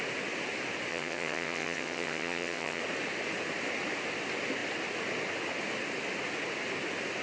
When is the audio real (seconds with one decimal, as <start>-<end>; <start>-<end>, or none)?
0.0-0.9; 2.8-7.2